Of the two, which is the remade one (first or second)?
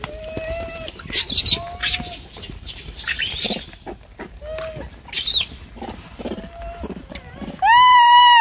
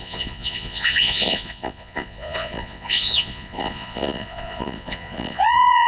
second